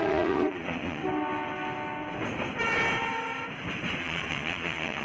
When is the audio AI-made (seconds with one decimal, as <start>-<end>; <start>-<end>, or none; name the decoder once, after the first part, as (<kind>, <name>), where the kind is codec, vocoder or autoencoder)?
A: 0.0-1.0 (vocoder, Vocos); 4.0-5.0